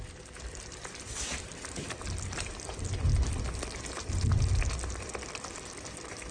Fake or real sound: real